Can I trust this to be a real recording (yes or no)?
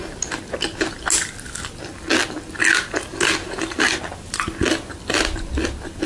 yes